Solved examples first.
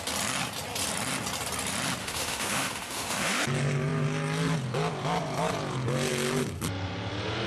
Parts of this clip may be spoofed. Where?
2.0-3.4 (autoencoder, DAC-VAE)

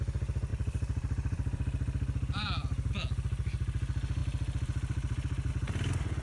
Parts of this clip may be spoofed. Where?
0.5-2.9 (vocoder, BigVGAN v2); 4.2-5.5

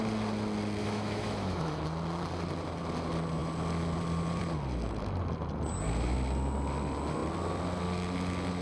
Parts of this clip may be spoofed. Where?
0.8-1.8 (autoencoder, DAC-VAE)

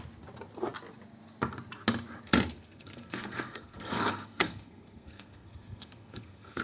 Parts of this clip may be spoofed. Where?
2.5-6.6 (codec, SNAC)

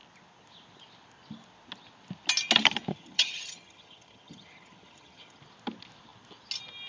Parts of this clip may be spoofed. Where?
2.9-5.4 (vocoder, HiFi-GAN)

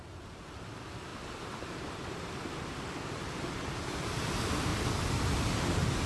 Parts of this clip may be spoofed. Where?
4.7-6.1 (vocoder, BigVGAN v2)